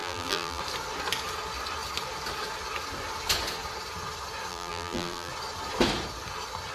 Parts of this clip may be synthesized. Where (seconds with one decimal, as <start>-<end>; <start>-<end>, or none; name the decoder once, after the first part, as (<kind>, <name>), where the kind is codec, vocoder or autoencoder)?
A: 0.0-0.6 (vocoder, BigVGAN v2); 4.5-5.3